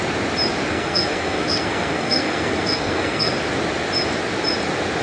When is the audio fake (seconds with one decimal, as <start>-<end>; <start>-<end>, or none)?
0.7-3.3

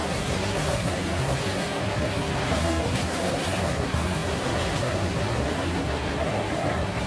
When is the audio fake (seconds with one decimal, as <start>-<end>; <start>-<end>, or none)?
0.0-7.1

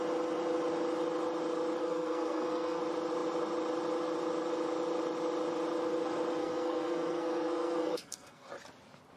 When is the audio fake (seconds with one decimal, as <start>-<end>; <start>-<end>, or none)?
1.8-2.8; 6.4-8.5

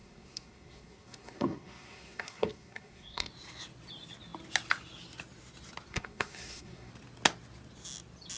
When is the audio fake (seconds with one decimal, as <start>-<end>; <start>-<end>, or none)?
0.0-3.3; 5.9-6.9

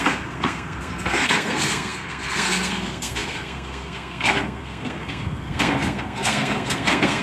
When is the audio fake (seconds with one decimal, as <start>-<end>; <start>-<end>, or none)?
0.0-7.2

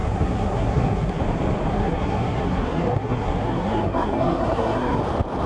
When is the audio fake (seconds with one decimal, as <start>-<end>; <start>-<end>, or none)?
0.0-1.2; 1.7-5.0